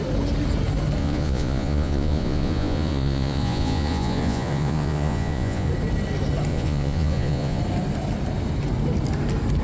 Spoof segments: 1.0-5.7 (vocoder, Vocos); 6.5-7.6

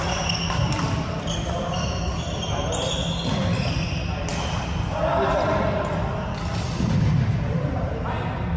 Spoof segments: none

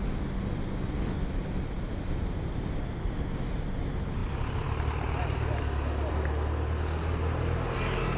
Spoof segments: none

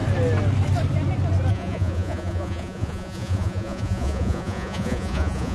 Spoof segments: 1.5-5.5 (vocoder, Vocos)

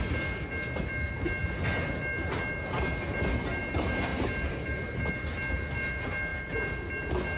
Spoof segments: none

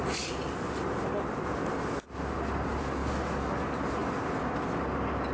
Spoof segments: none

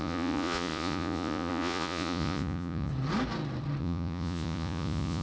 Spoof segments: 0.0-2.9 (vocoder, Vocos); 3.8-5.2

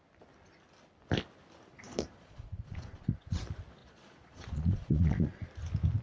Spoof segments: 1.7-3.4 (vocoder, Vocos); 3.8-5.5